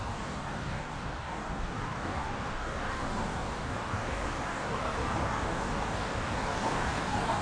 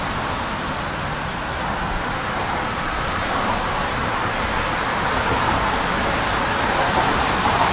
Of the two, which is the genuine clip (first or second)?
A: second